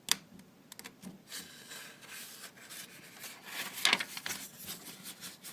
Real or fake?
real